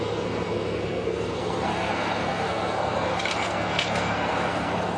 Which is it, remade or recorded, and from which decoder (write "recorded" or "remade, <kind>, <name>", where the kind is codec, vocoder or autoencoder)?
remade, codec, SNAC